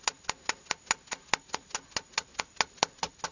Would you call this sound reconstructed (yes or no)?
no